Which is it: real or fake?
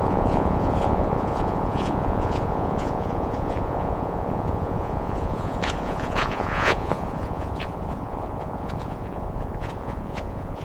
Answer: fake